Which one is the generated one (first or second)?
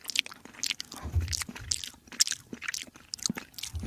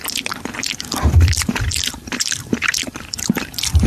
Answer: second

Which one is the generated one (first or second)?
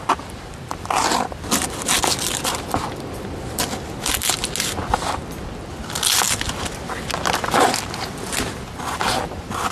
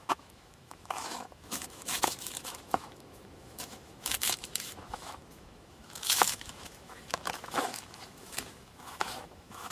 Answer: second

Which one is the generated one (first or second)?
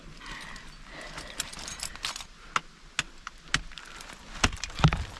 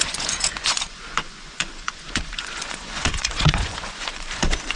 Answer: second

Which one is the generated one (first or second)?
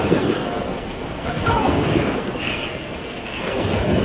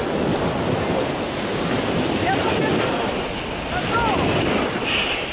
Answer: first